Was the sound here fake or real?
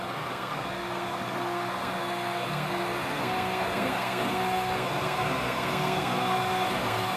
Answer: fake